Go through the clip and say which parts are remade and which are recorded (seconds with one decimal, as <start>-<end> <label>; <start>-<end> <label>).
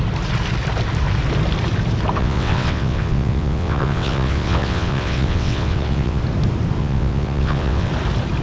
0.0-2.2 recorded; 2.2-6.2 remade; 6.2-6.8 recorded; 6.8-7.9 remade; 7.9-8.4 recorded